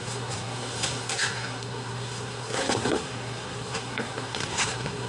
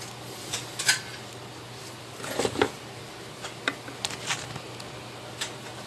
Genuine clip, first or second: second